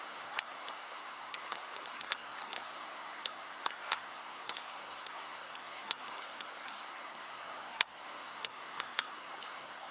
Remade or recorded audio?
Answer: remade